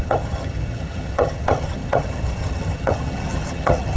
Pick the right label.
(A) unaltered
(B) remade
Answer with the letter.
B